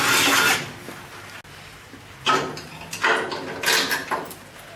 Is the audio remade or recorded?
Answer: recorded